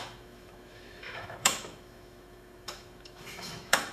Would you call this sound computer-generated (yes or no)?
yes